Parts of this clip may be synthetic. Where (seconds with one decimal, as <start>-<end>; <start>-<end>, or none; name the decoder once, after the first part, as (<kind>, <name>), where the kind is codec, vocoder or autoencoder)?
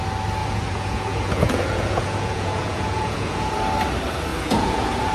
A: 0.4-3.5 (vocoder, Vocos); 4.3-5.1